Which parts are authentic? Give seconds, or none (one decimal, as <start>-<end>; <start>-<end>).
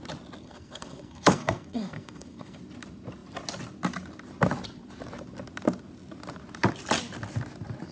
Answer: 0.0-0.4; 2.6-7.9